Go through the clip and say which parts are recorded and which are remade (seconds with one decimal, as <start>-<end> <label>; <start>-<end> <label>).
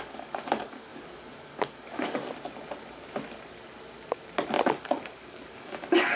0.0-2.2 remade; 2.2-4.8 recorded; 4.8-6.2 remade